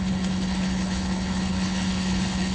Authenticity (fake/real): fake